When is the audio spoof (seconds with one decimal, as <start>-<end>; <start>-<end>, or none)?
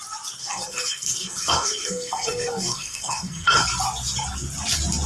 0.4-3.5